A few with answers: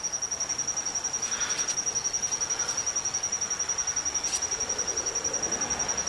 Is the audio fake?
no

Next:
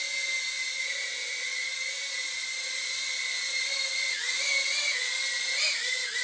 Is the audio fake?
no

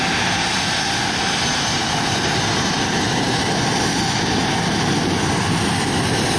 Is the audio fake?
no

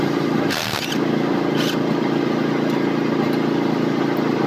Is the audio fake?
no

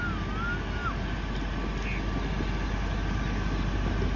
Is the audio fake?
no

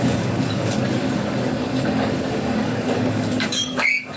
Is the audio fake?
yes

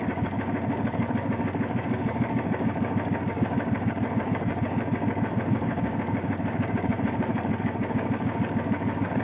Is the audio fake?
yes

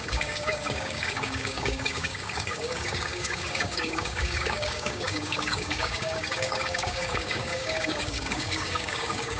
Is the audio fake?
yes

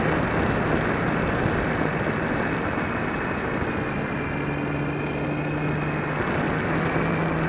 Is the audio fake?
no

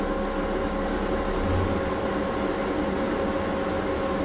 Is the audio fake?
no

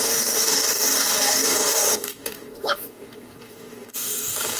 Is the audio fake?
yes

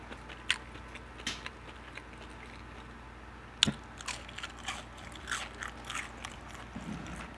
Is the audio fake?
no